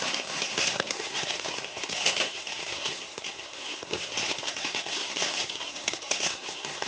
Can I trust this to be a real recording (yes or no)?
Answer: no